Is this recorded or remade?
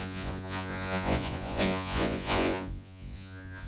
remade